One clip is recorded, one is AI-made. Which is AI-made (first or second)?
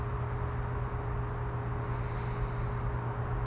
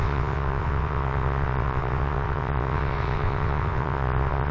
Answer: second